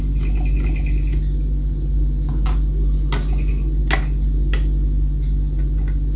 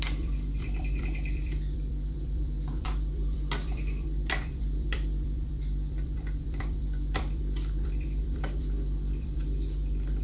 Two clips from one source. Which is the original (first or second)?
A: first